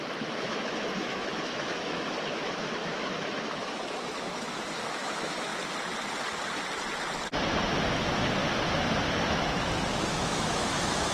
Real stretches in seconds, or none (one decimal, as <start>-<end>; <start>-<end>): 5.5-7.9; 8.4-10.0